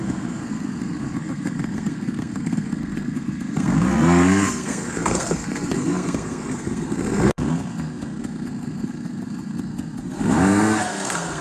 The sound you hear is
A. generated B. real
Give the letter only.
A